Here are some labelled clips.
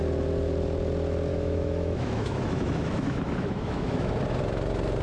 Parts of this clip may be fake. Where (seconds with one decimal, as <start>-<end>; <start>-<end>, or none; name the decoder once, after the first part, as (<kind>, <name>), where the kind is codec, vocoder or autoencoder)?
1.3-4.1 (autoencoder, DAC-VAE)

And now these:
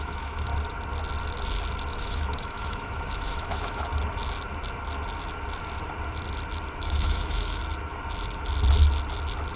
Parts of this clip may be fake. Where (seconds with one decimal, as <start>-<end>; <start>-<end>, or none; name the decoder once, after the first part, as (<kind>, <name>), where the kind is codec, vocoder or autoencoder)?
0.0-0.5 (autoencoder, DAC-VAE); 1.9-3.9; 6.8-7.6

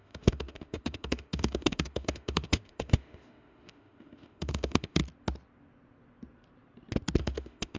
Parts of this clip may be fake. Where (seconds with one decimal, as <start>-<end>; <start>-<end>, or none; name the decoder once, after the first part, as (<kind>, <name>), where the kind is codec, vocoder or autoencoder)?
0.0-5.0 (autoencoder, DAC-VAE); 7.2-7.8